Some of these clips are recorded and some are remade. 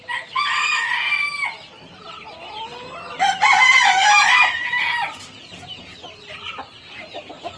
recorded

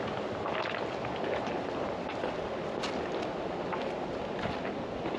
recorded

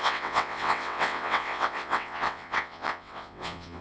remade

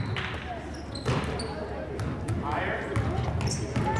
recorded